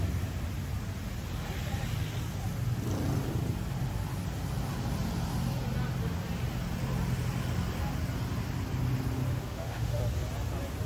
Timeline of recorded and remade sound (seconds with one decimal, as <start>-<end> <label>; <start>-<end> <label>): 0.0-9.3 recorded; 9.3-10.0 remade; 10.0-10.9 recorded